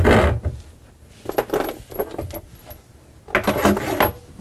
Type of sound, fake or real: real